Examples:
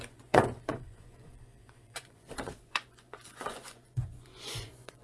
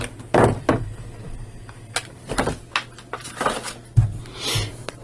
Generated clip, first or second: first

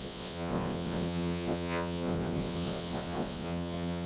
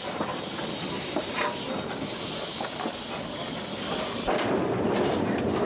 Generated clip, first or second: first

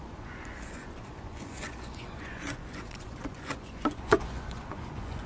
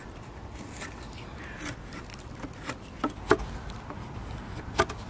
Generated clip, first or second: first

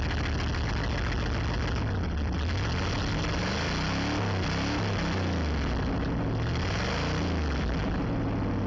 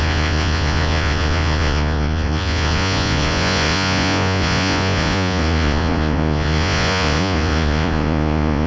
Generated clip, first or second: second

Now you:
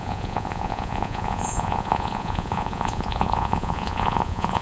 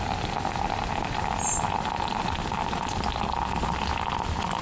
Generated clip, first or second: first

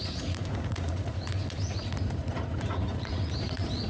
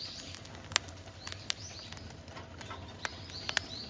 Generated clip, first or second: first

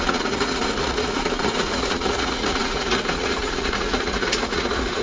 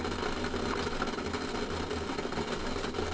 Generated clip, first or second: first